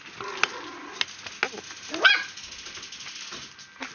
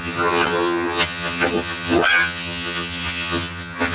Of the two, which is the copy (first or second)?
second